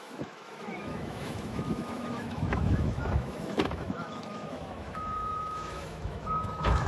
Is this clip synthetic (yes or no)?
yes